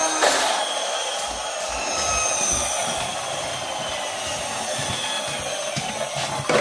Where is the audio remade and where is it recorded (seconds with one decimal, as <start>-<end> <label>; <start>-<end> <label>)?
0.0-6.6 recorded